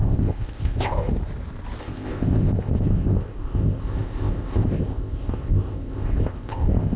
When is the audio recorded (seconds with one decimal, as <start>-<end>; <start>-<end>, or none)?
1.1-1.8